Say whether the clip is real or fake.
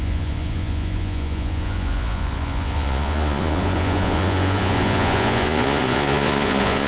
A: fake